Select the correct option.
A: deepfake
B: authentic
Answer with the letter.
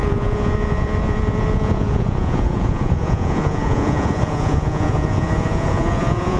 A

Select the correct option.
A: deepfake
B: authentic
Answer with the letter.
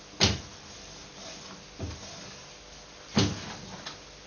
B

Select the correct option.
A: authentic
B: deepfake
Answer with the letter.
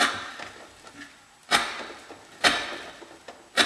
A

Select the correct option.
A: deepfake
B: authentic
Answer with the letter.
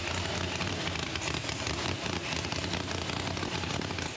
B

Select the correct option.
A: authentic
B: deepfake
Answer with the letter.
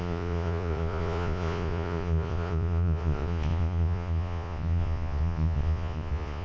B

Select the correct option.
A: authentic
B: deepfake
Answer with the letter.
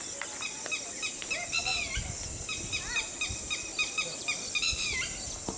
A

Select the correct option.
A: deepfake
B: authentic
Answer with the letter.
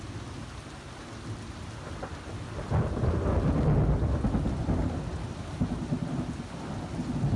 B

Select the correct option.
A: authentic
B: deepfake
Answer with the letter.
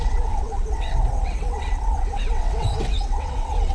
B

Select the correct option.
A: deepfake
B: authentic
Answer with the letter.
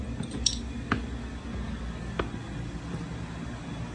B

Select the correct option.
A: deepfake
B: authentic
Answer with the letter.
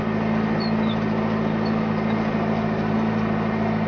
B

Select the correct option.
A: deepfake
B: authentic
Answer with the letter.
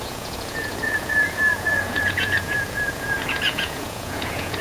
A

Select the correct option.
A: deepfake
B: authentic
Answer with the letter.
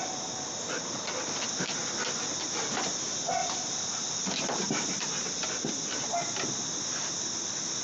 B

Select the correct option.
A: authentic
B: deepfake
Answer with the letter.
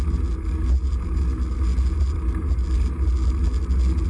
A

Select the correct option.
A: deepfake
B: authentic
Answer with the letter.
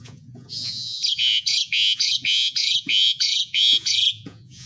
A